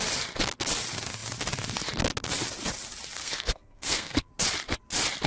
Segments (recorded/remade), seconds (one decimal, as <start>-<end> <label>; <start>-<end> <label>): 0.0-3.2 recorded; 3.2-4.3 remade; 4.3-5.3 recorded